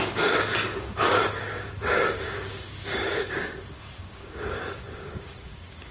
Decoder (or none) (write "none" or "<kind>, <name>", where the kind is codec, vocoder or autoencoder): codec, DAC